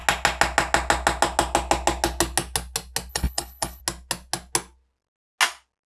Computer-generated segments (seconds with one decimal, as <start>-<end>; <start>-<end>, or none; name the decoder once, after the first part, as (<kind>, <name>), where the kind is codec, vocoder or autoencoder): 3.1-3.8 (codec, HILCodec)